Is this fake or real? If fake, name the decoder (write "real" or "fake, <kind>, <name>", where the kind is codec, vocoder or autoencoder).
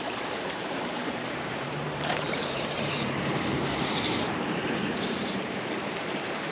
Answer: fake, vocoder, BigVGAN v2